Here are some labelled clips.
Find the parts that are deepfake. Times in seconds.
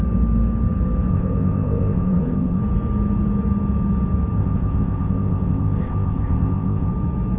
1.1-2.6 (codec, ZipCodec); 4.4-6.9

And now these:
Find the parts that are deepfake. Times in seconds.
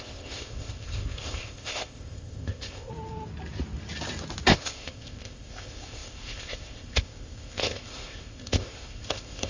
0.0-2.9 (codec, ZipCodec); 4.5-9.5